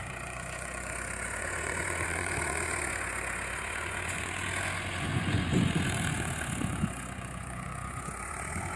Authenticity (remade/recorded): remade